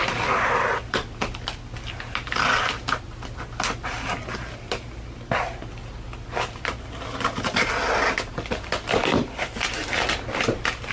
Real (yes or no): yes